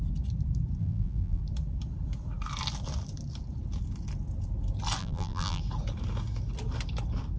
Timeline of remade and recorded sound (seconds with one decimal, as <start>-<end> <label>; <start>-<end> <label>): 0.0-0.8 recorded; 0.8-1.4 remade; 1.4-5.0 recorded; 5.0-5.6 remade; 5.6-7.4 recorded